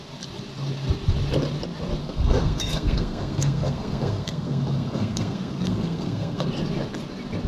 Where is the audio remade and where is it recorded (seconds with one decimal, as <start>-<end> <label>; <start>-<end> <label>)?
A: 0.0-2.0 recorded; 2.0-6.5 remade; 6.5-7.5 recorded